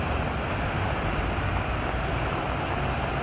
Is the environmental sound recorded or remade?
recorded